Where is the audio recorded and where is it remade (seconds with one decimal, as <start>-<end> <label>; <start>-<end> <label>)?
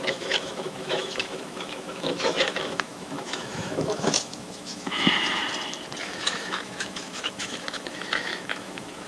0.0-5.4 remade; 5.4-6.0 recorded; 6.0-9.1 remade